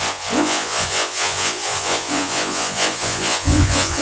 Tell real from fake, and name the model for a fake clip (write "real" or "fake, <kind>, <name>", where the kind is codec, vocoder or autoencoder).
fake, vocoder, Vocos